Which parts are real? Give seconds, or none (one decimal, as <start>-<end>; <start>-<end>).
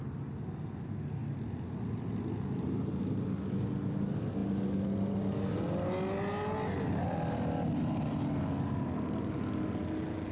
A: 0.0-10.3